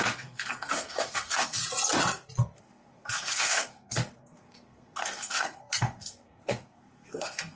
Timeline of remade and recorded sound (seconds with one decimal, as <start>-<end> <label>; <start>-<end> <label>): 0.0-1.6 remade; 1.6-2.6 recorded; 2.6-7.6 remade